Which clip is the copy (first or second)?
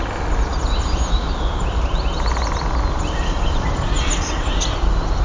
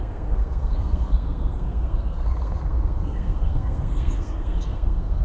second